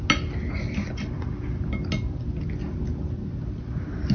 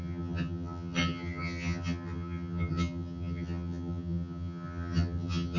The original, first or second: first